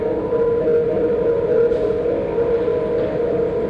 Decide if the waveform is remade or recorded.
recorded